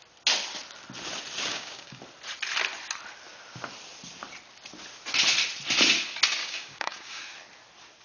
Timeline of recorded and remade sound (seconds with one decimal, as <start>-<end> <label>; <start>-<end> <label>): 0.0-1.5 recorded; 1.5-2.0 remade; 2.0-6.4 recorded; 6.4-7.2 remade; 7.2-8.0 recorded